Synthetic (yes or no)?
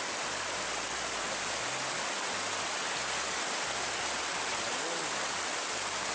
no